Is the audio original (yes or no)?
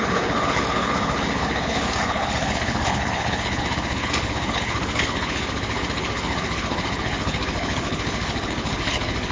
no